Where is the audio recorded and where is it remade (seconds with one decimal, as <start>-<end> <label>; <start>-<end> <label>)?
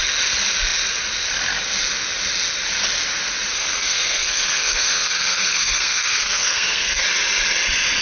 0.0-3.5 recorded; 3.5-7.0 remade; 7.0-8.0 recorded